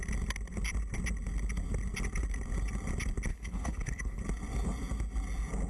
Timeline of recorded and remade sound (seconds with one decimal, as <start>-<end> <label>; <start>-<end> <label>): 0.0-3.3 recorded; 3.3-4.2 remade; 4.2-5.7 recorded